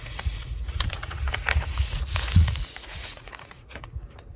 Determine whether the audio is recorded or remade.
remade